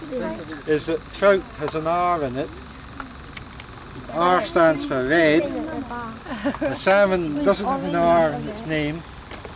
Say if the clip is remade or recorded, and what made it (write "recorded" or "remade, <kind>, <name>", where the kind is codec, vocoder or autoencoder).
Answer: recorded